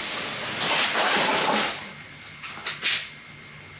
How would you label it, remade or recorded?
recorded